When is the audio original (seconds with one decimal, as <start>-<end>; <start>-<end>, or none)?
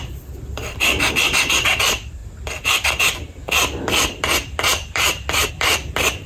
none